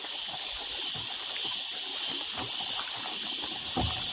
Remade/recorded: remade